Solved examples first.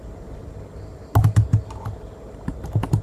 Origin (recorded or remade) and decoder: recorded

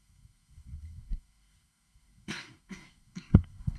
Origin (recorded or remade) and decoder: remade, codec, SNAC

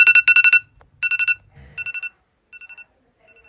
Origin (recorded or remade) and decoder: recorded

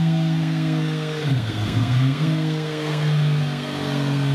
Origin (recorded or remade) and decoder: remade, codec, SNAC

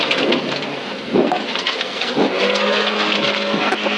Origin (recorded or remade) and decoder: remade, codec, SNAC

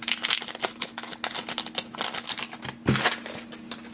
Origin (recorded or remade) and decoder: recorded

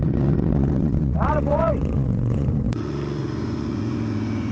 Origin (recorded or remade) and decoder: remade, vocoder, Vocos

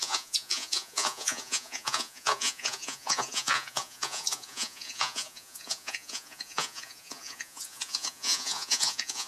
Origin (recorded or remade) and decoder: remade, vocoder, Vocos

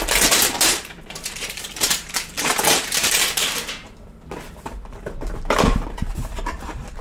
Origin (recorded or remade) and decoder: remade, vocoder, BigVGAN v2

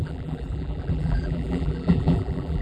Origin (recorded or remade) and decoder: remade, vocoder, BigVGAN v2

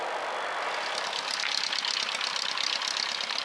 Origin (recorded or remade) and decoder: recorded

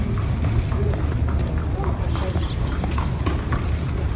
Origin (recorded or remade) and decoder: recorded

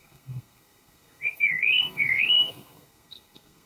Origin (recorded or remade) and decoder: remade, codec, SNAC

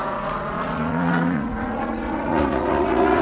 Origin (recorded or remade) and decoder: remade, vocoder, Vocos